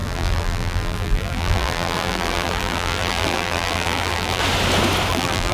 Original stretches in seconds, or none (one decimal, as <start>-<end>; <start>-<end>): 4.4-5.1